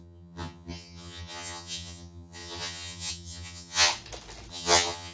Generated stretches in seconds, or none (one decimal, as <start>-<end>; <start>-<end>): 0.0-3.9; 4.5-5.1